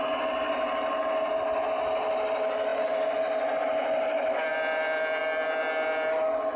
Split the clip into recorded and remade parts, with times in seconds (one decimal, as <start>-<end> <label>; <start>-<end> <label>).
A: 0.0-6.6 recorded